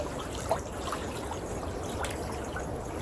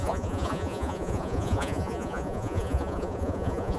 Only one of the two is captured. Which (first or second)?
first